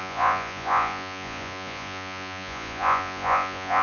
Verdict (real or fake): fake